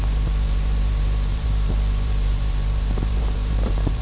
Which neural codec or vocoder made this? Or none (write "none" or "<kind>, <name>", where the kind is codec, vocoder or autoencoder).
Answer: vocoder, BigVGAN v2